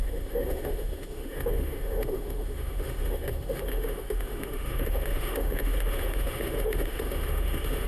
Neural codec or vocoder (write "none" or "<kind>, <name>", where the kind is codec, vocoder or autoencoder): autoencoder, DAC-VAE